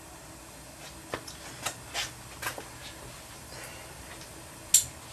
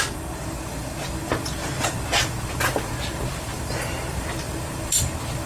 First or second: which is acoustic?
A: first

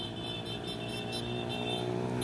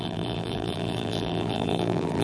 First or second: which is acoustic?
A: first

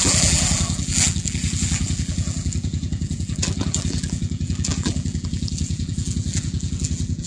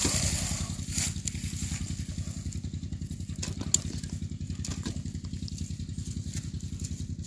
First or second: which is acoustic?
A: second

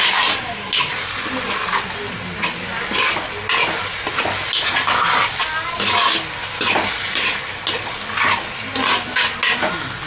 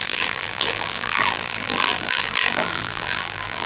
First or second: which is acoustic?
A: first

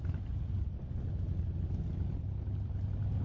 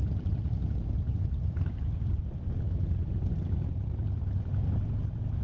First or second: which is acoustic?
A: first